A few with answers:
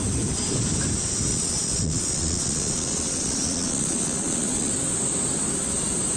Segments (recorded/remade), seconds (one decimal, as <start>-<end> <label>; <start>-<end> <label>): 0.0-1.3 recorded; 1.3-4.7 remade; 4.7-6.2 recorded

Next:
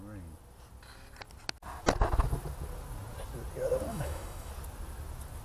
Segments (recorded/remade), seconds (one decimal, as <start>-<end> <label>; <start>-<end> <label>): 0.0-3.9 recorded; 3.9-4.5 remade; 4.5-5.4 recorded

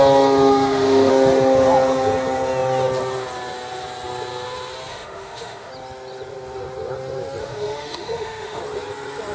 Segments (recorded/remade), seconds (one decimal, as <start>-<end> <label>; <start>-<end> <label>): 0.0-0.5 recorded; 0.5-1.1 remade; 1.1-4.9 recorded; 4.9-5.7 remade; 5.7-7.4 recorded; 7.4-8.6 remade; 8.6-9.3 recorded

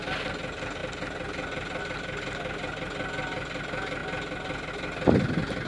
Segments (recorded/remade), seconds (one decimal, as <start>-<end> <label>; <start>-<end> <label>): 0.0-5.7 recorded

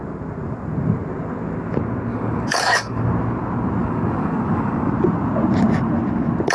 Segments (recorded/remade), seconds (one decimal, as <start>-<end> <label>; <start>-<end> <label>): 0.0-2.1 recorded; 2.1-3.0 remade; 3.0-3.8 recorded; 3.8-4.9 remade; 4.9-6.5 recorded